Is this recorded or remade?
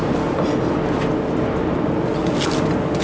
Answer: recorded